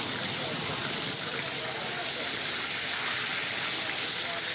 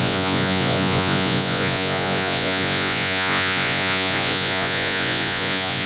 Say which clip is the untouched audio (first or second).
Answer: first